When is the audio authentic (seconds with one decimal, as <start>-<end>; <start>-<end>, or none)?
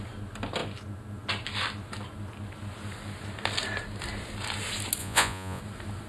0.0-5.0; 5.6-6.1